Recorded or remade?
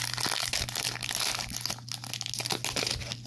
recorded